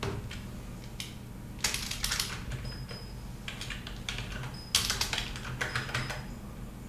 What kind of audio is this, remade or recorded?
recorded